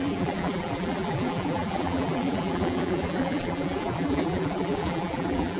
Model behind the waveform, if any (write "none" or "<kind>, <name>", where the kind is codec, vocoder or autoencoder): vocoder, BigVGAN v2